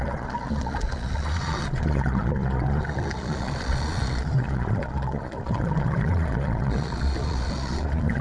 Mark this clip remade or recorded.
remade